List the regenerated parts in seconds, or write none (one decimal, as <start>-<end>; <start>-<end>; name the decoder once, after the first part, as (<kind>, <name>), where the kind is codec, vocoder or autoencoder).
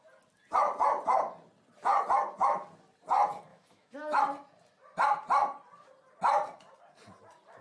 3.5-4.2 (autoencoder, DAC-VAE)